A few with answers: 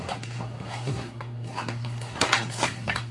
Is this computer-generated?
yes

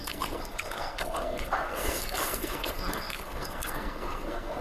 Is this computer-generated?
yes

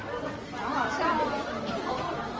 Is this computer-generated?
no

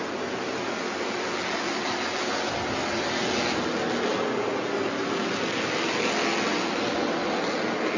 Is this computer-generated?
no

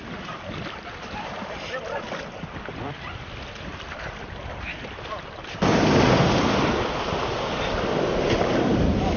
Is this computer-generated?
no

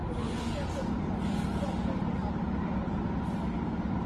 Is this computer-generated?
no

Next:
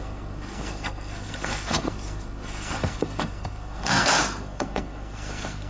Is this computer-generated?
yes